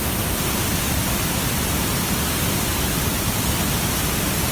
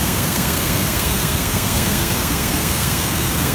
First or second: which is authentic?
first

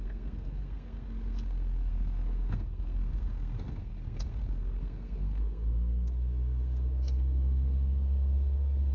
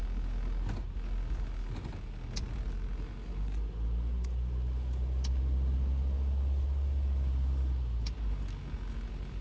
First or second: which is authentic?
second